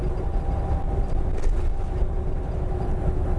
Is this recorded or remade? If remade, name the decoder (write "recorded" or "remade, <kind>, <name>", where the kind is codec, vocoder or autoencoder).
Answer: recorded